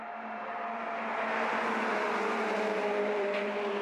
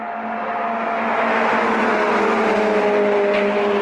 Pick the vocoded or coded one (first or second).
first